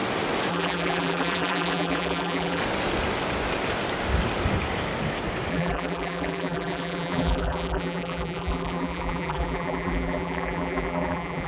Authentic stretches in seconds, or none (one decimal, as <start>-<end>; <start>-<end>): 0.0-0.5; 2.6-5.5